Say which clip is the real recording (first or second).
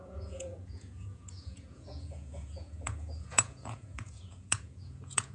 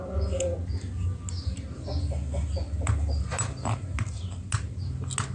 second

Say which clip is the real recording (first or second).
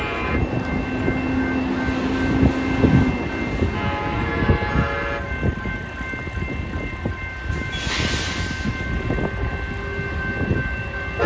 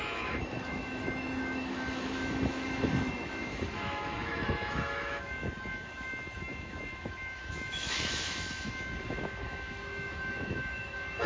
first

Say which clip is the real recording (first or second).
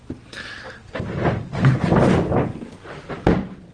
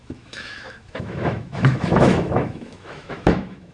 first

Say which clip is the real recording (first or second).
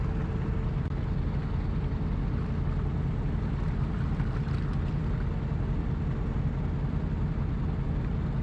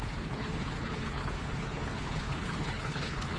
first